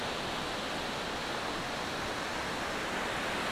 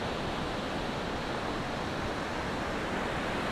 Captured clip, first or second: first